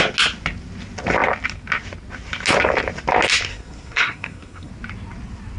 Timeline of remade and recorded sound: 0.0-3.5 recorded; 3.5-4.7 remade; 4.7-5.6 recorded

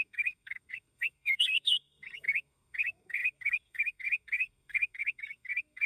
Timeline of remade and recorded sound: 0.0-5.9 remade

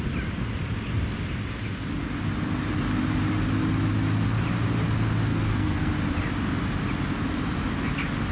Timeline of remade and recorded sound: 0.0-5.3 recorded; 5.3-5.9 remade; 5.9-8.3 recorded